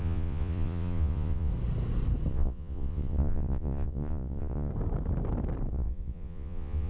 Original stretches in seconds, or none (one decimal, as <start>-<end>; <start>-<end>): 1.5-2.3; 4.7-5.7